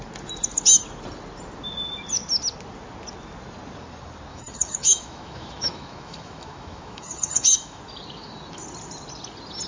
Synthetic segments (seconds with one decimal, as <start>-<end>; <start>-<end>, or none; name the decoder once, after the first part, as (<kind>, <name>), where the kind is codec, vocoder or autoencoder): 4.3-7.8 (autoencoder, DAC-VAE)